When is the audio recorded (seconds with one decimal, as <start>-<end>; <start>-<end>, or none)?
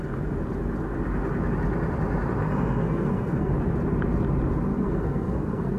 0.0-2.4; 3.5-4.7